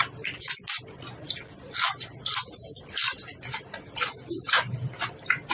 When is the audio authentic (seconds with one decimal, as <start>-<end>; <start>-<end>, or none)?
0.0-5.5